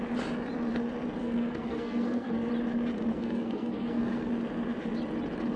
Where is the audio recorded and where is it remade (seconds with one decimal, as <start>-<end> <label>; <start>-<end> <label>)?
0.0-1.2 recorded; 1.2-2.5 remade; 2.5-3.1 recorded; 3.1-4.3 remade; 4.3-5.6 recorded